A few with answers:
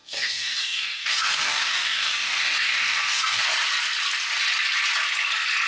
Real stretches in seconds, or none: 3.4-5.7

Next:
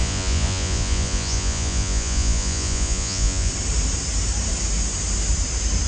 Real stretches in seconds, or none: 3.5-5.9